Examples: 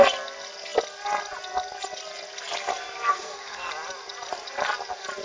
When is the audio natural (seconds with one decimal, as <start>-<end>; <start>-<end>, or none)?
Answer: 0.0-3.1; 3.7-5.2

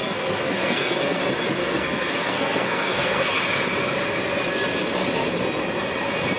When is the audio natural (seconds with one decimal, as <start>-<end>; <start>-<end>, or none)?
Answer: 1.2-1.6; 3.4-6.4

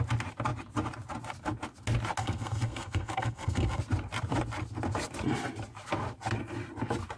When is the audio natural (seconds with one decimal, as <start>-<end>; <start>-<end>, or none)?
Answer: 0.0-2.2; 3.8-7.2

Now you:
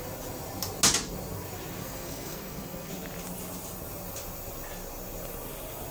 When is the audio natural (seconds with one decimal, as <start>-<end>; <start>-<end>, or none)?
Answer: 0.0-1.8; 2.9-5.9

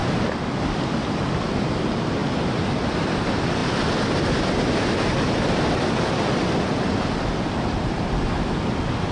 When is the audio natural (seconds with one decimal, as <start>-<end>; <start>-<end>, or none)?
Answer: 0.0-9.1

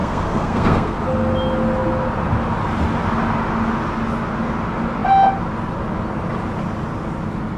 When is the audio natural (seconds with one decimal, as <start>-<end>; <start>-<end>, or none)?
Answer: 1.0-7.6

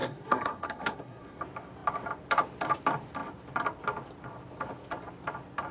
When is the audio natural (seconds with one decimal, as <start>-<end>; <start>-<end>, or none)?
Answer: 1.4-5.7

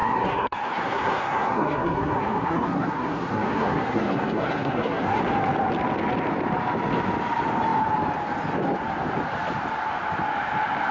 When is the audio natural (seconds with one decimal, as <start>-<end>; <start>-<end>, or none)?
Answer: 5.2-10.9